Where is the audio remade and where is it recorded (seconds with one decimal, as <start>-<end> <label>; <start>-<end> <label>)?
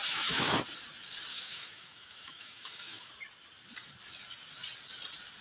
0.0-0.6 remade; 0.6-1.3 recorded; 1.3-3.1 remade; 3.1-5.4 recorded